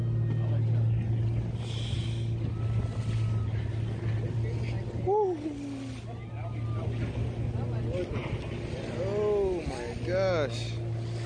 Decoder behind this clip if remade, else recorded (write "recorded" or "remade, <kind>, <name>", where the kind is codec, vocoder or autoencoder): recorded